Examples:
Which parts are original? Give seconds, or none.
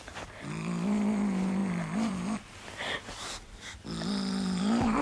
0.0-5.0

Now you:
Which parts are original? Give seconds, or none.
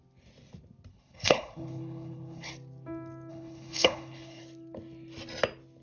0.0-0.9; 2.5-3.3; 4.4-5.8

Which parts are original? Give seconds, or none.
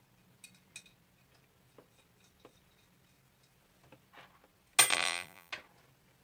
0.0-4.9; 5.5-6.2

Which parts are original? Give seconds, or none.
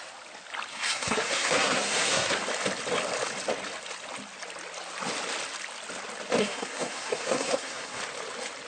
0.0-0.7; 2.4-6.4; 8.0-8.7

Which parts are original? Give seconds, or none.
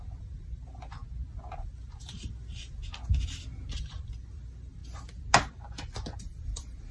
1.0-1.6; 2.8-3.7; 4.8-6.2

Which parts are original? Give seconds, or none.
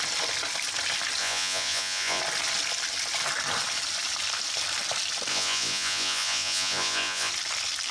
0.0-1.2; 2.2-5.3; 7.3-7.9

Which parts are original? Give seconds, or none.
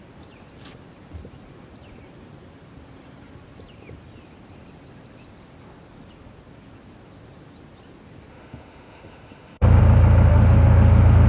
0.0-8.3; 9.8-10.3